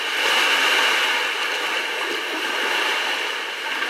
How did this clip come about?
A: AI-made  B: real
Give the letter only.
B